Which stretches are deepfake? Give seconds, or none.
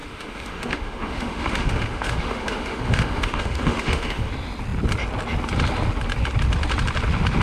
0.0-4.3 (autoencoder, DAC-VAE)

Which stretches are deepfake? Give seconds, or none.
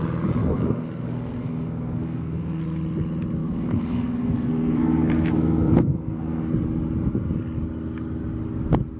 0.4-2.6 (codec, SNAC); 3.4-6.5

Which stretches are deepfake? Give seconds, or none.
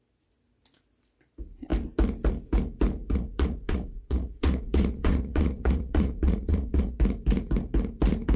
3.0-7.0 (vocoder, Vocos)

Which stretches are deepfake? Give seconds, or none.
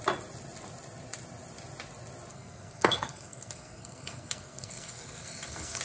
2.3-5.8 (codec, SNAC)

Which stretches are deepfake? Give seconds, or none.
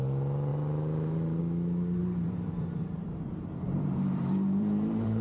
0.5-1.4 (vocoder, BigVGAN v2); 2.0-5.2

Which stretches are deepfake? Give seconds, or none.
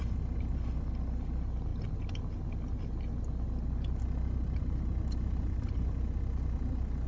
none